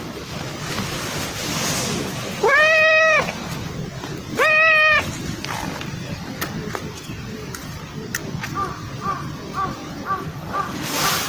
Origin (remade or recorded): recorded